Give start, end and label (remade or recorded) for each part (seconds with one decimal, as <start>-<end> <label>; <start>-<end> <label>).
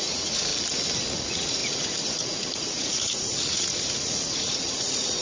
0.0-0.5 remade; 0.5-1.1 recorded; 1.1-5.2 remade